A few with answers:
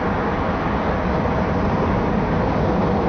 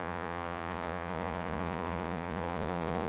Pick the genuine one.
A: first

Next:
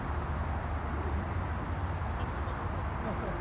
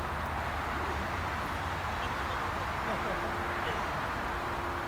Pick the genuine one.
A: second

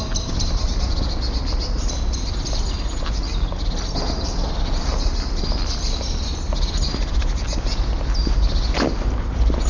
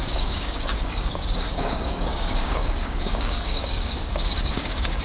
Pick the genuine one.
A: first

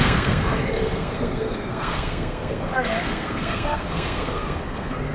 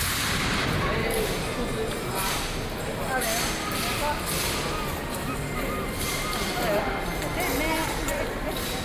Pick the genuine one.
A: second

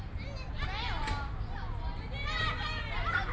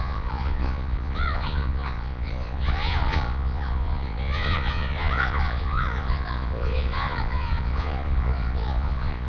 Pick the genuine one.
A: first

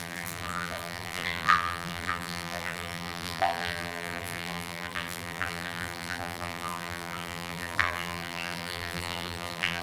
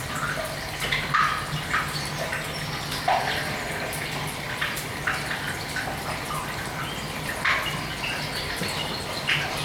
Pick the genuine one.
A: second